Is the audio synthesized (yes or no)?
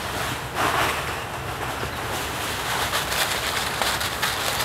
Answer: no